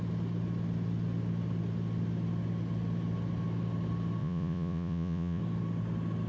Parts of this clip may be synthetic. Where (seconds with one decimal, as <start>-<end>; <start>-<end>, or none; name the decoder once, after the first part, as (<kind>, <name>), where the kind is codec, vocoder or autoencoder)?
4.2-5.4 (vocoder, Vocos)

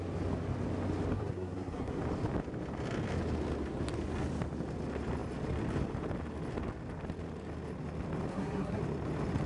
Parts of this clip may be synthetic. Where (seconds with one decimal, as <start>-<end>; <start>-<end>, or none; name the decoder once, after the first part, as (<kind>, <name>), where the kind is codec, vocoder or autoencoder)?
1.1-2.0 (codec, SNAC); 8.3-8.8

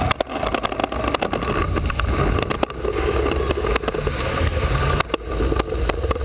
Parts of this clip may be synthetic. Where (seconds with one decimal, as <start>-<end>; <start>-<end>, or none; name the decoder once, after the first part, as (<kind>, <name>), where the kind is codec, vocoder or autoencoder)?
none

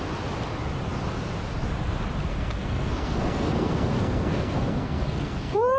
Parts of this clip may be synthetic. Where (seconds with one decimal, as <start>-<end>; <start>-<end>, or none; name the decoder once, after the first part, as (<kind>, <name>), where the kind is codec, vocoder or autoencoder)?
2.3-5.8 (codec, SNAC)